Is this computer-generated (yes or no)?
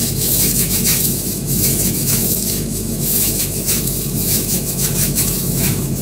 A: yes